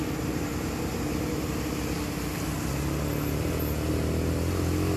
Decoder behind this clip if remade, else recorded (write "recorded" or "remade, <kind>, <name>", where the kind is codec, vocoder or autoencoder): recorded